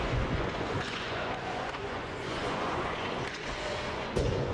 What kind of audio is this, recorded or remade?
remade